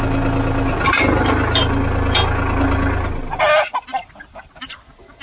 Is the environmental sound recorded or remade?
recorded